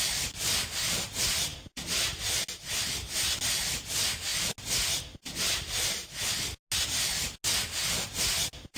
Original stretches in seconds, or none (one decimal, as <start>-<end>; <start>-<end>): 0.0-8.8

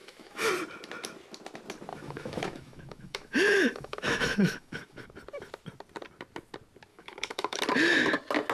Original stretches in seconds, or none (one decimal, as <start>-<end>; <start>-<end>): 0.5-1.9; 5.1-6.9; 7.6-8.5

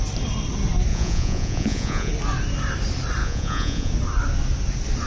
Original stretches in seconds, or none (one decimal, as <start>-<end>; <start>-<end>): 0.0-0.9; 2.1-3.2; 3.9-5.1

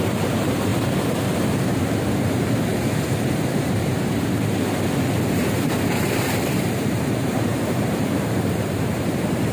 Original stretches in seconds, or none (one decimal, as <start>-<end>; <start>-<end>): 0.7-3.0; 4.1-4.9

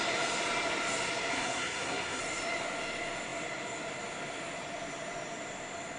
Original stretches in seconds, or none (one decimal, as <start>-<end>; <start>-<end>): 0.0-1.3; 2.2-6.0